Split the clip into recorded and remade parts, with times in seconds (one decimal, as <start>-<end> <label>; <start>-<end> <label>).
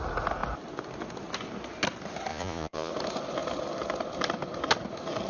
0.0-2.3 recorded; 2.3-2.9 remade; 2.9-5.3 recorded